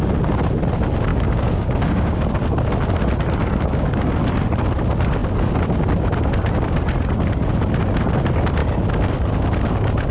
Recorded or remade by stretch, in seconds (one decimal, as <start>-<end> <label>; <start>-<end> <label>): 0.0-1.1 recorded; 1.1-2.2 remade; 2.2-3.4 recorded; 3.4-4.1 remade; 4.1-10.1 recorded